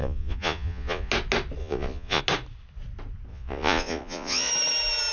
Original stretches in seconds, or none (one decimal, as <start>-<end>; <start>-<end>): 1.1-1.6; 2.2-3.3; 4.5-5.1